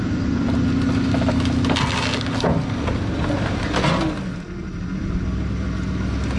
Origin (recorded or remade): recorded